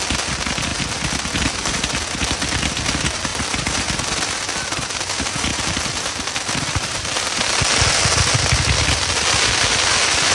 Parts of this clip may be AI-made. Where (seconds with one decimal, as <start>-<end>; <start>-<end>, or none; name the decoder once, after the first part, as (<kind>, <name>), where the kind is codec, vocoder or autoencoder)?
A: 5.5-7.4 (vocoder, BigVGAN v2)